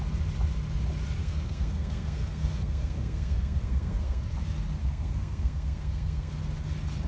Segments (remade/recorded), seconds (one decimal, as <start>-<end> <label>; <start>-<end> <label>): 0.0-1.2 recorded; 1.2-4.2 remade; 4.2-4.8 recorded; 4.8-6.3 remade; 6.3-7.1 recorded